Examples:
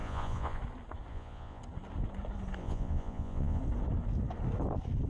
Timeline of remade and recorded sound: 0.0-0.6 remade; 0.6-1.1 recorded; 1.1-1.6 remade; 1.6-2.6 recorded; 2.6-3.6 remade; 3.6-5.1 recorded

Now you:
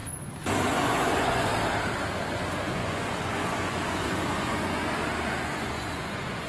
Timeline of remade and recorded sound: 0.0-0.7 recorded; 0.7-1.5 remade; 1.5-2.2 recorded; 2.2-6.5 remade